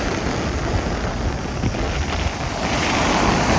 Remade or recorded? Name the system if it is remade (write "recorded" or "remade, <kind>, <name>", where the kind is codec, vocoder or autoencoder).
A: recorded